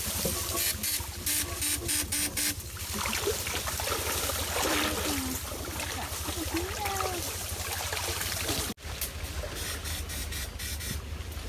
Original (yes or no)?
yes